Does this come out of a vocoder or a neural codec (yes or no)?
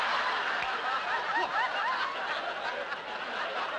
no